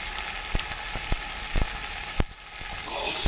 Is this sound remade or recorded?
recorded